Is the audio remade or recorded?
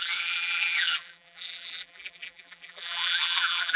remade